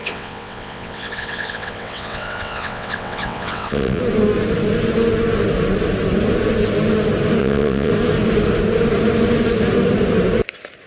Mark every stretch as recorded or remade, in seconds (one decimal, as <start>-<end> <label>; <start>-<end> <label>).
0.0-4.0 remade; 4.0-7.4 recorded; 7.4-7.9 remade; 7.9-10.9 recorded